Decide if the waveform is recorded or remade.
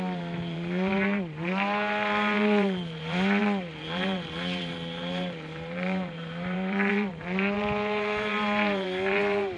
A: remade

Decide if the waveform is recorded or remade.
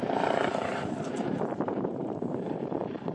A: remade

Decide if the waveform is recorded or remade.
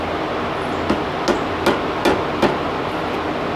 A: recorded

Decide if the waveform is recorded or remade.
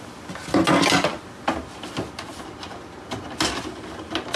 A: recorded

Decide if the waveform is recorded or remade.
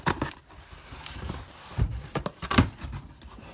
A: recorded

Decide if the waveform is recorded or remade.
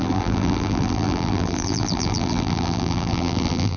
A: remade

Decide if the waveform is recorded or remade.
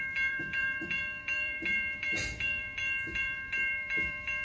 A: remade